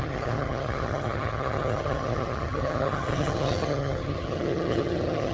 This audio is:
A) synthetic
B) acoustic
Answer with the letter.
A